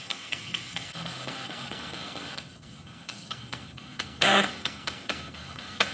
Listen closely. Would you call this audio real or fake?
fake